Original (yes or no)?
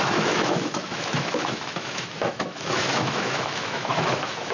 no